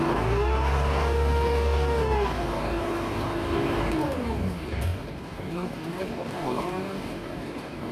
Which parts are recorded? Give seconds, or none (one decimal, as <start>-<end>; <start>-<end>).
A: none